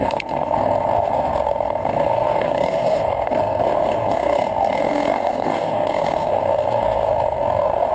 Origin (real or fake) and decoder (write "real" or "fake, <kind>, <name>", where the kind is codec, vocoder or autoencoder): fake, codec, SNAC